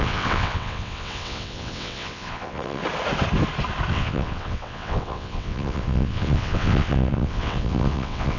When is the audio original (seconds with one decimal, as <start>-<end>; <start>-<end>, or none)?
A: 2.8-3.9